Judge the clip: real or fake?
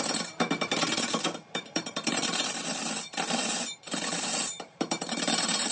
fake